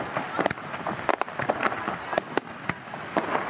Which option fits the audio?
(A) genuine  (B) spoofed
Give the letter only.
A